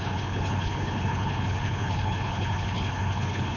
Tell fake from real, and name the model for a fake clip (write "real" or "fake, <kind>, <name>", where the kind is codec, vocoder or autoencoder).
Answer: fake, codec, HILCodec